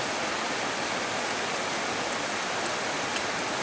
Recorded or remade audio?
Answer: recorded